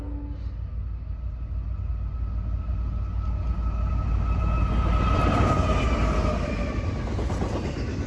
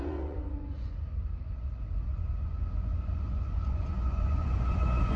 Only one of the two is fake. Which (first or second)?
second